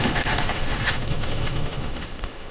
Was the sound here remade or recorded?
remade